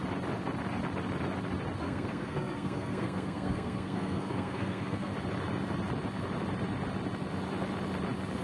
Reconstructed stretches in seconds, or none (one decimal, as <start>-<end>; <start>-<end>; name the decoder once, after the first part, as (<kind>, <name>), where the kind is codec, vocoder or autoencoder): 1.8-5.1 (codec, SNAC)